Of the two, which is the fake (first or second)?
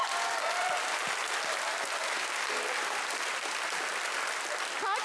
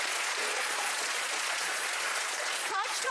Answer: second